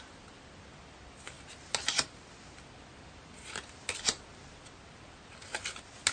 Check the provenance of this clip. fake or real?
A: real